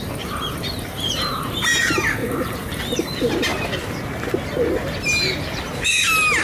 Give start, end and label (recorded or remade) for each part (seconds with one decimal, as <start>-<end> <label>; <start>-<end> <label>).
0.0-2.2 recorded; 2.2-2.8 remade; 2.8-6.4 recorded